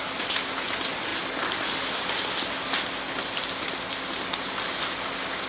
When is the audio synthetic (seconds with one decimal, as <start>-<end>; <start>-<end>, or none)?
none